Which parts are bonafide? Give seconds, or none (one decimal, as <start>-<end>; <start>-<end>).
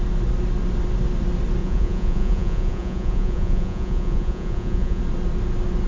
0.0-1.6; 5.0-5.9